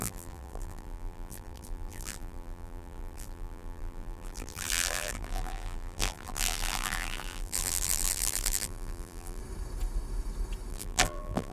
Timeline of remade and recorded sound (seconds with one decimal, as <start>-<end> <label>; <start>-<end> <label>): 0.0-9.4 remade; 9.4-10.7 recorded; 10.7-11.5 remade